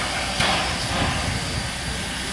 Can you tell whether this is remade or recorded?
recorded